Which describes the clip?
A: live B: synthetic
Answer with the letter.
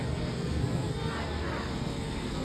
B